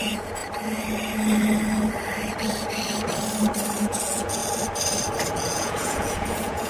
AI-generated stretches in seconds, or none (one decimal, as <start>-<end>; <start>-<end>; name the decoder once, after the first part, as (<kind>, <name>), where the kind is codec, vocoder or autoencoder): 0.0-0.4 (vocoder, Vocos); 3.8-4.4; 5.3-6.7